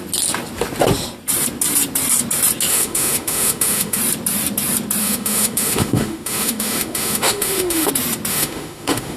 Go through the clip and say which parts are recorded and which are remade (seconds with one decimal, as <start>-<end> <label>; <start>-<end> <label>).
0.0-2.7 recorded; 2.7-4.0 remade; 4.0-5.0 recorded; 5.0-7.9 remade; 7.9-8.3 recorded; 8.3-9.2 remade

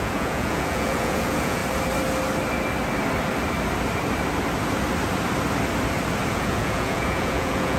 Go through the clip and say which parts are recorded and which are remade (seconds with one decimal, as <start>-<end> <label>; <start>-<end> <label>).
0.0-1.6 remade; 1.6-6.3 recorded; 6.3-7.8 remade

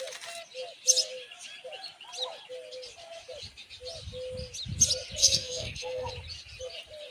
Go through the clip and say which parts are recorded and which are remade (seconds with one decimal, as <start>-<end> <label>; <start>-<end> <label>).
0.0-5.2 recorded; 5.2-6.1 remade; 6.1-7.1 recorded

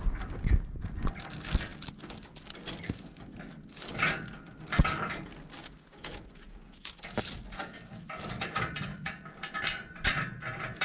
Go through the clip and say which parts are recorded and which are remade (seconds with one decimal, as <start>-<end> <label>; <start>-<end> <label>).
0.0-5.6 recorded; 5.6-7.0 remade; 7.0-10.8 recorded

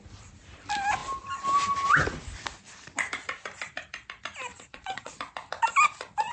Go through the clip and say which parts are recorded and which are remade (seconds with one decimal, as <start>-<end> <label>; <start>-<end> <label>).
0.0-4.5 recorded; 4.5-5.1 remade; 5.1-6.3 recorded

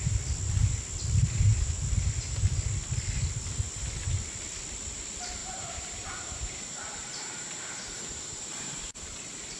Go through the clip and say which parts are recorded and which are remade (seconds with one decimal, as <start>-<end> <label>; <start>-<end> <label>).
0.0-5.4 recorded; 5.4-9.6 remade

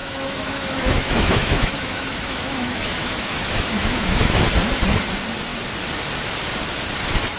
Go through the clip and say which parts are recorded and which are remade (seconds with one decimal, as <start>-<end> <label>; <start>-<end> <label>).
0.0-4.4 remade; 4.4-7.4 recorded

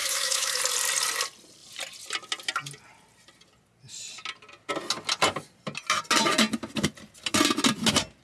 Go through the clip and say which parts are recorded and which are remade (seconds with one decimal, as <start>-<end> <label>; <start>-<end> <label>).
0.0-0.6 remade; 0.6-8.2 recorded